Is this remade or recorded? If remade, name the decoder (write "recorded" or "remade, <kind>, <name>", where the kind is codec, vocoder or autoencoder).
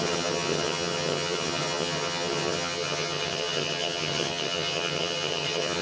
remade, vocoder, HiFi-GAN